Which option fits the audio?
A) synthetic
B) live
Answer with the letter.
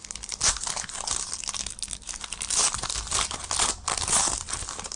B